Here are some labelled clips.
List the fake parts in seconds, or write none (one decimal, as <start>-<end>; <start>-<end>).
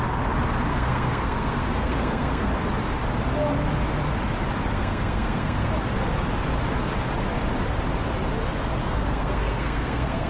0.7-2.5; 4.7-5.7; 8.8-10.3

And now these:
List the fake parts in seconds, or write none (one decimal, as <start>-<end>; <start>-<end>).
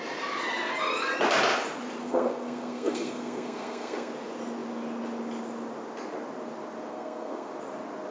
2.0-4.1; 6.9-7.5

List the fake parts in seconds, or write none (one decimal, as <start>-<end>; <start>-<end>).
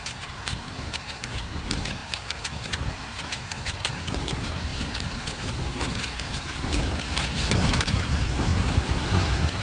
0.0-9.6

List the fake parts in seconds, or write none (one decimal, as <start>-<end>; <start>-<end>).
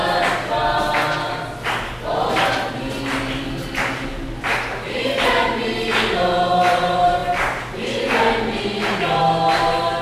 none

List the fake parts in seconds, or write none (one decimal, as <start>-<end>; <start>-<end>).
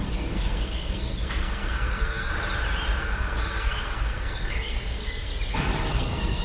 0.0-2.3; 3.0-5.3; 5.9-6.4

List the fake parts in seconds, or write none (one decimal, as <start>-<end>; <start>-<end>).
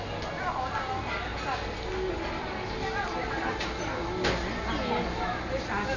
none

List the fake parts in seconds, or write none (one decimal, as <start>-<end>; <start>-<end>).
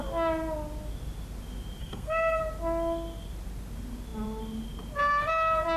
1.8-2.4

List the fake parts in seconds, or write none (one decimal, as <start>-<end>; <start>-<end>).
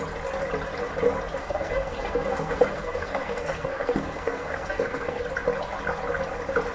1.4-5.2